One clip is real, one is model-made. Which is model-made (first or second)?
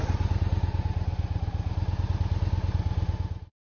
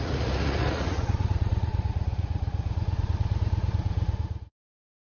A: second